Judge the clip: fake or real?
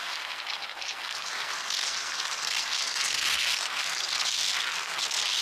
fake